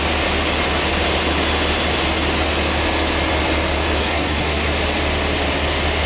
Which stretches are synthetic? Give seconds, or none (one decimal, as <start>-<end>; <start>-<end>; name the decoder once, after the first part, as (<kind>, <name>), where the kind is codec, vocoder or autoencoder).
4.0-4.7 (codec, SNAC)